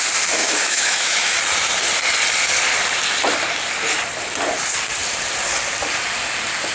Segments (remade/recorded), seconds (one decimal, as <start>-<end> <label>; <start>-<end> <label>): 0.0-0.4 recorded; 0.4-1.4 remade; 1.4-6.7 recorded

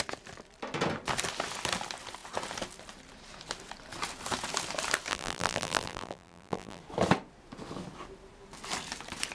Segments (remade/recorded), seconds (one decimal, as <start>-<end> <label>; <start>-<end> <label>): 0.0-5.1 recorded; 5.1-6.8 remade; 6.8-9.3 recorded

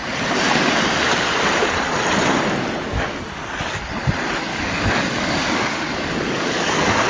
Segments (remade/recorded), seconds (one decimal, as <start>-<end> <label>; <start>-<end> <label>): 0.0-2.9 recorded; 2.9-3.5 remade; 3.5-4.5 recorded; 4.5-7.1 remade